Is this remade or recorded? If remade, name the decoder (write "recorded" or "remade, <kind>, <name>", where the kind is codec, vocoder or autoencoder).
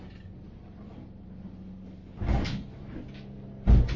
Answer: recorded